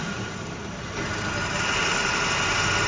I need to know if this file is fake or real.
real